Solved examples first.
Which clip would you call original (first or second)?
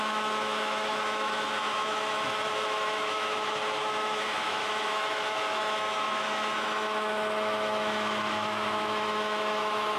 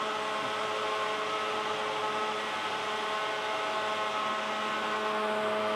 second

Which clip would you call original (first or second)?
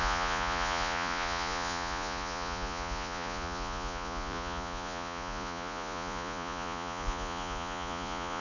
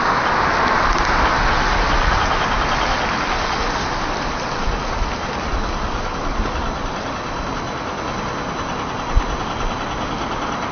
second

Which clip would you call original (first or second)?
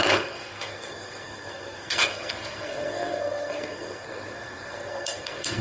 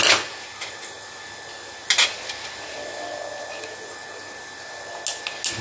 second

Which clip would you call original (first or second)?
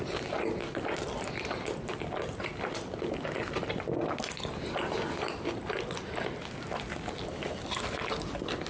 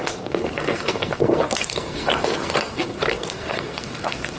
first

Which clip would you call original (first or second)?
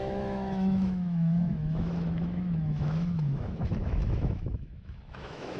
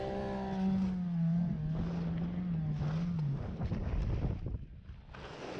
second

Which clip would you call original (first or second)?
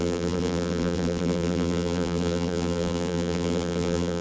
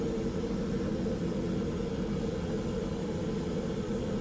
second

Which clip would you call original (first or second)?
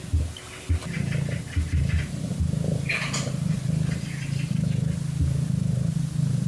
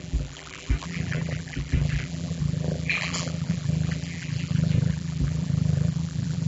first